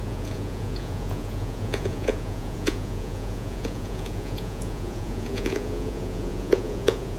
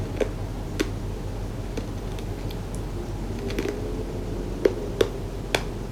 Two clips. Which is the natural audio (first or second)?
second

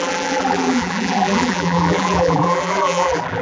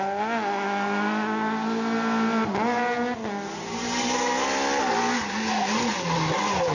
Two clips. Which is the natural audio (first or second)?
second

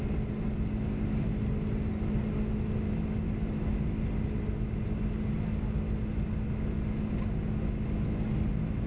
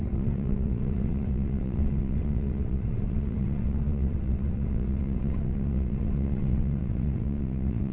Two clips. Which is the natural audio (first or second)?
first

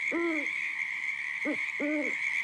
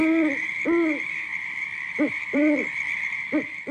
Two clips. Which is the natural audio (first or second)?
first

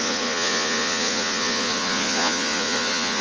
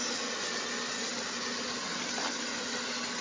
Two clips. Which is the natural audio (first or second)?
second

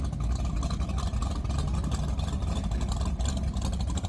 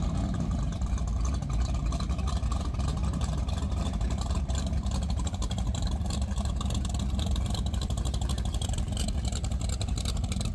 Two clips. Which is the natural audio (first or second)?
first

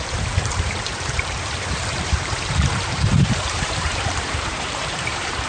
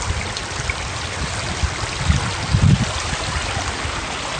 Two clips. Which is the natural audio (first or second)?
second